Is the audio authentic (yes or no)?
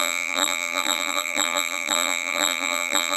no